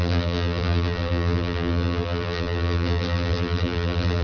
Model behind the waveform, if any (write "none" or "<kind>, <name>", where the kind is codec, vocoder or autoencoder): vocoder, BigVGAN v2